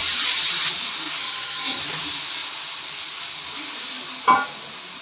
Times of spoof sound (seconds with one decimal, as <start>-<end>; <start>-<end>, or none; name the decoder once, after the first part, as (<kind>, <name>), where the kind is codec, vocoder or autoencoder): 1.2-1.8 (codec, SNAC)